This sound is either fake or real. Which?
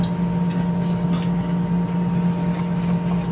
real